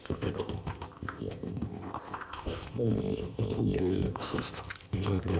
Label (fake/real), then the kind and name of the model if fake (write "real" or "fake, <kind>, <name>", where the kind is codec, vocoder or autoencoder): fake, codec, ZipCodec